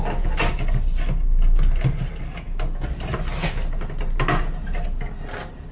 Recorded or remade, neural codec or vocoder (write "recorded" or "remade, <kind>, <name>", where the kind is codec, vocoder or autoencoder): recorded